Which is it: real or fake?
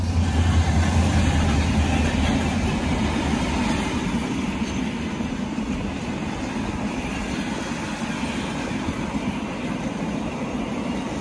real